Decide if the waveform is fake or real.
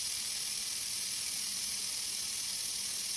fake